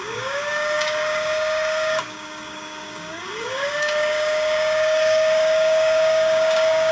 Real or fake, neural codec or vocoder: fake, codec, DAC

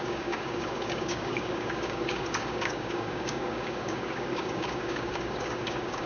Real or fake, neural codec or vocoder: fake, codec, DAC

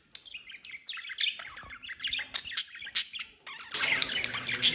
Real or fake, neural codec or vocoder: real